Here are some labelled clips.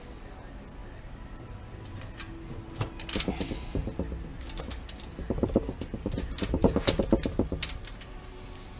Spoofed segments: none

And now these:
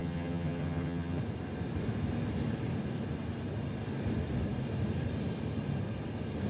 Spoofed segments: 0.0-1.2 (vocoder, HiFi-GAN)